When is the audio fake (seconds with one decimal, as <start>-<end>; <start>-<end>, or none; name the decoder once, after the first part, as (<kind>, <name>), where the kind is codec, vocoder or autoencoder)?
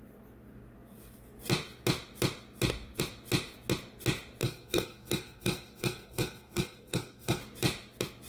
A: 4.4-7.4 (codec, SNAC)